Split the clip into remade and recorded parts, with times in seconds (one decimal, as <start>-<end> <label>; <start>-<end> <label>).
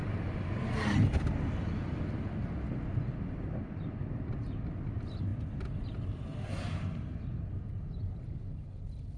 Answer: 0.0-9.2 recorded